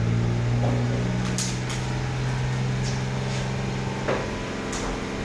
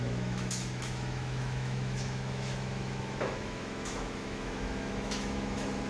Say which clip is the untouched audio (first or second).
first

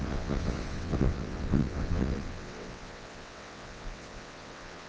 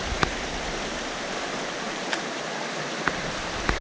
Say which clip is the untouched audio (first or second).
second